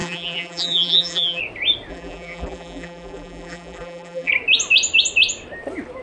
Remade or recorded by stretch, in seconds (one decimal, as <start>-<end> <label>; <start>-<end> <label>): 0.0-1.4 remade; 1.4-1.9 recorded; 1.9-4.3 remade; 4.3-6.0 recorded